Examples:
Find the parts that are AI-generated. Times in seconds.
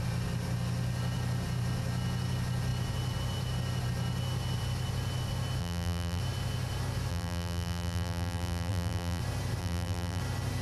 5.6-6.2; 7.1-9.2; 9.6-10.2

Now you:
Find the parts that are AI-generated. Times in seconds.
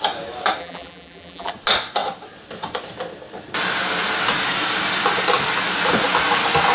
0.6-1.5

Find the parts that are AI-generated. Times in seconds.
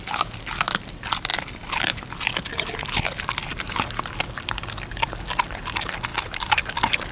1.3-2.9; 6.1-7.1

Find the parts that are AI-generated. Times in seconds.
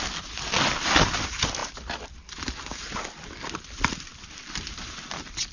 4.1-5.5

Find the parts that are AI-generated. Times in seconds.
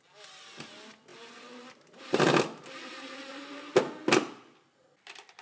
1.1-3.1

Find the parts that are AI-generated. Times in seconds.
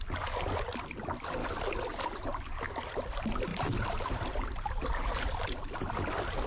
3.5-5.9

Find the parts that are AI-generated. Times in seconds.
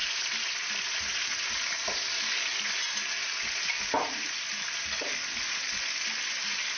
0.0-0.9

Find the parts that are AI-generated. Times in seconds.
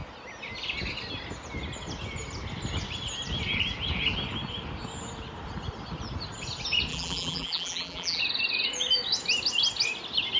6.9-8.2